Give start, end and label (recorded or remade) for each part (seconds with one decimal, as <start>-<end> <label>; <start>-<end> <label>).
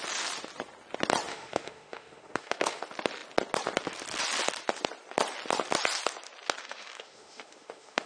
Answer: 0.0-1.3 recorded; 1.3-2.8 remade; 2.8-6.6 recorded; 6.6-8.1 remade